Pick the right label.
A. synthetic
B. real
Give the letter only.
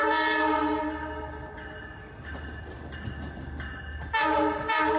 B